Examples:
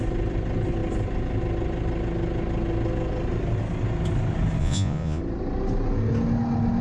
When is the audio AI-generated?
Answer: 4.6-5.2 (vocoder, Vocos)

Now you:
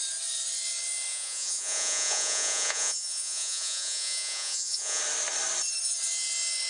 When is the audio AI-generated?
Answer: 1.1-5.0 (vocoder, Vocos)